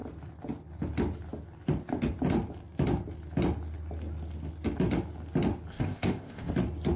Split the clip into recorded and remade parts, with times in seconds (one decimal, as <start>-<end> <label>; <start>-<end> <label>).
0.0-5.7 recorded; 5.7-6.5 remade; 6.5-7.0 recorded